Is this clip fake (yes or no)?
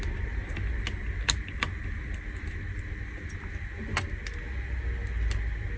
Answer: no